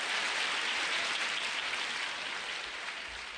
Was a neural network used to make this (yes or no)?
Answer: no